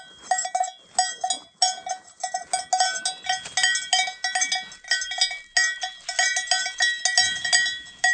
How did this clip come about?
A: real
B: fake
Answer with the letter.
A